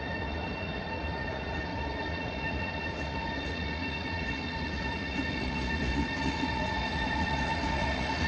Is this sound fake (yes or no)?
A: yes